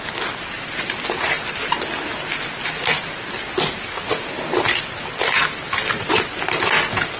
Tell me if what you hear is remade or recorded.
recorded